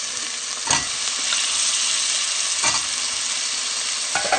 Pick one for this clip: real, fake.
real